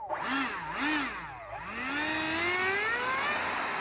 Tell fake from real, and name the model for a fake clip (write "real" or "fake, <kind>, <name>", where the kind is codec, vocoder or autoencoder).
real